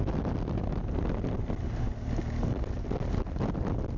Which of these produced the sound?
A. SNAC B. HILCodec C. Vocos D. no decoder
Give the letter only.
D